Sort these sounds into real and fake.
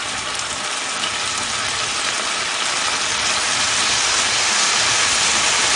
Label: real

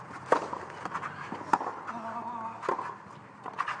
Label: real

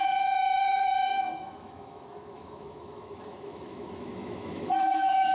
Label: fake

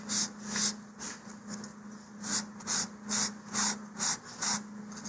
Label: real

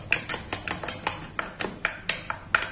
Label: real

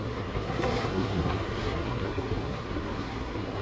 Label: fake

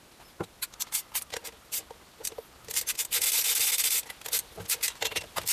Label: real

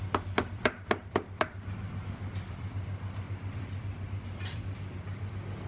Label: fake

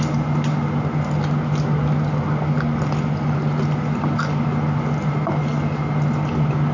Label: real